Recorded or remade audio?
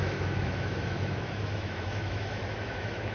remade